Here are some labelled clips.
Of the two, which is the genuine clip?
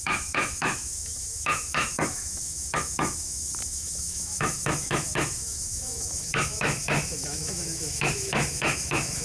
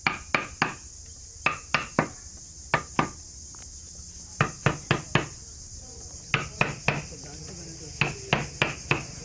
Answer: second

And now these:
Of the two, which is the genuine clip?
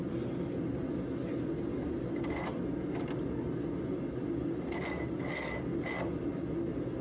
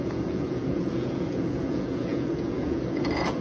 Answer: first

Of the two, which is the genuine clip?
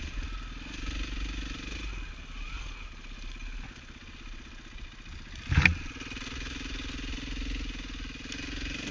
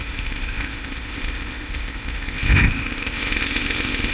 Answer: first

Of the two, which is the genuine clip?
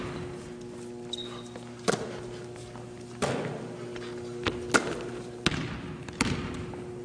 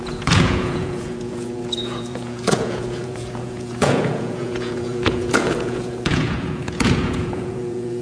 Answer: first